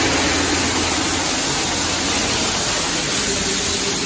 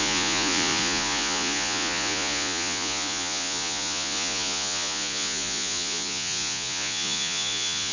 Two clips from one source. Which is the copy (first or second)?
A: second